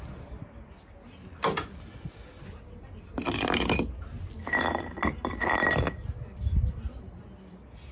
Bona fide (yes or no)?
yes